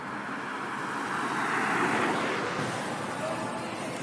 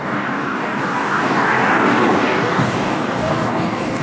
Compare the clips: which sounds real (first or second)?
first